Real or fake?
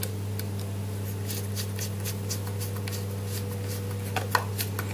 real